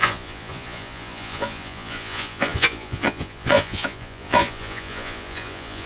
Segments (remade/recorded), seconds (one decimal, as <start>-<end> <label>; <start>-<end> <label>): 0.0-5.9 remade